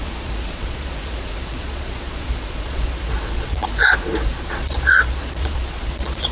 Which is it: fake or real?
fake